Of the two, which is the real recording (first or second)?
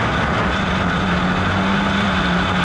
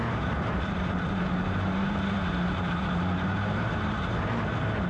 first